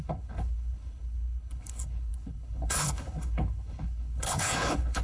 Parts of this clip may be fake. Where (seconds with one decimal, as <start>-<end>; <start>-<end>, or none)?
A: 0.0-5.0